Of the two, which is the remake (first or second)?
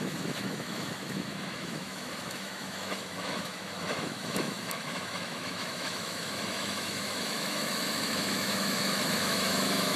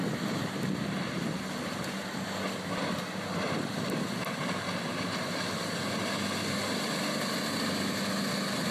first